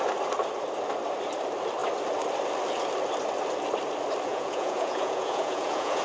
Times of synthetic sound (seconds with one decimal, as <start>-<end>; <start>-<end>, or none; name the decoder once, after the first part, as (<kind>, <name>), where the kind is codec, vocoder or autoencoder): 4.3-6.0 (vocoder, Vocos)